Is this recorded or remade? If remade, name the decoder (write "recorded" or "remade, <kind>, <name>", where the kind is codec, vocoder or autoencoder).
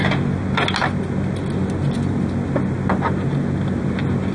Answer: recorded